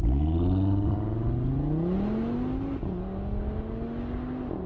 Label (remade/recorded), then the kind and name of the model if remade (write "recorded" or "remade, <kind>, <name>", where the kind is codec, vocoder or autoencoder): recorded